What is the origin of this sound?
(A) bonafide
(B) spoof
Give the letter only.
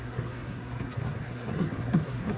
B